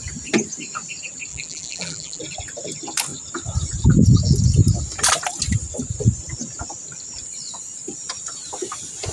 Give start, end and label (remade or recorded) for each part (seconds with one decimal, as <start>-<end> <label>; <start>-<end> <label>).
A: 0.0-1.3 recorded; 1.3-2.2 remade; 2.2-9.1 recorded